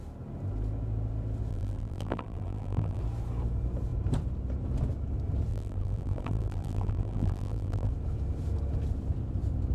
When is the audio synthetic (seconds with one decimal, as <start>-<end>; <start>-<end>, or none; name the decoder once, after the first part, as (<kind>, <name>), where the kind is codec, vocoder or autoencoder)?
1.5-3.0 (vocoder, BigVGAN v2); 5.5-7.9